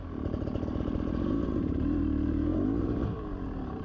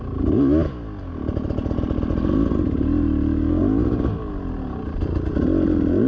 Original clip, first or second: second